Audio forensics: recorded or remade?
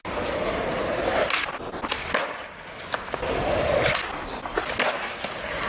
recorded